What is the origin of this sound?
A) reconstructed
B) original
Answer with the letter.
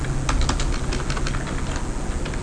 B